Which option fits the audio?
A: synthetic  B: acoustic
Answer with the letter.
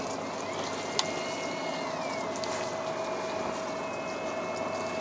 B